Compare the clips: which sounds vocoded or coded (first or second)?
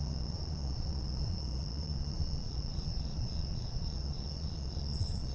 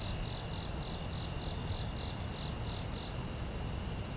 first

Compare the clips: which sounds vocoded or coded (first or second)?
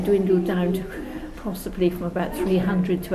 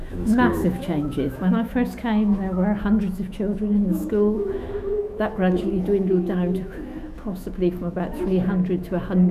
second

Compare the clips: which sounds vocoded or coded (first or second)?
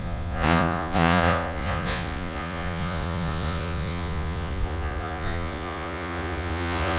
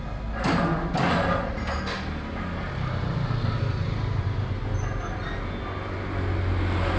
first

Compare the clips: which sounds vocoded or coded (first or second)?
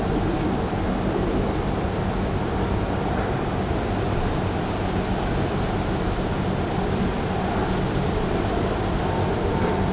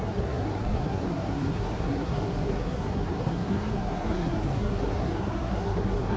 second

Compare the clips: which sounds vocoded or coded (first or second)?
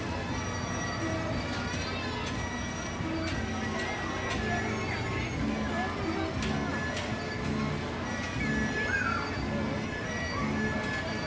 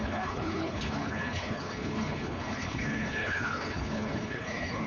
second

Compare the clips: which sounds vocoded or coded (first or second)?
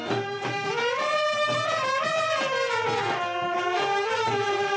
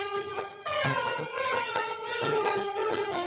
second